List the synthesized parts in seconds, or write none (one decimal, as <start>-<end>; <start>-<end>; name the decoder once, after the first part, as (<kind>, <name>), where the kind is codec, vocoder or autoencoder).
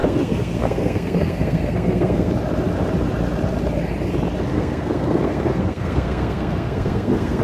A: 0.0-2.3 (codec, SNAC); 4.5-7.4